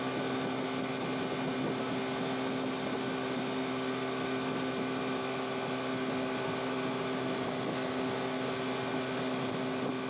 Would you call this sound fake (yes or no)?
no